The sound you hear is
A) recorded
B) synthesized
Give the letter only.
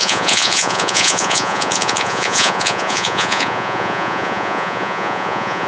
B